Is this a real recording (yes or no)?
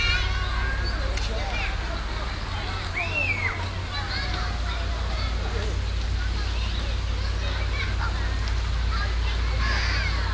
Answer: yes